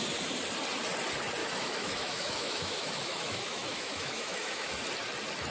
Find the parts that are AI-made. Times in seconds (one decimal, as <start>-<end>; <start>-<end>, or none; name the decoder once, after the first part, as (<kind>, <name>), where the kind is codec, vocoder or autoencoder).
1.4-4.7 (autoencoder, DAC-VAE)